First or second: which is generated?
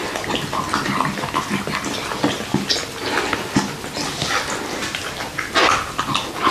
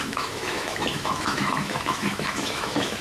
second